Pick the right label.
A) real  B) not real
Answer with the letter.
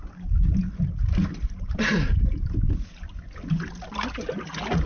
A